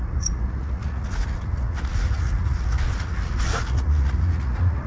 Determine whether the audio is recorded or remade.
remade